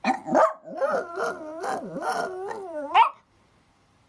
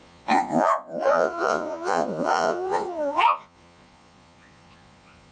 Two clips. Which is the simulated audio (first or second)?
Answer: second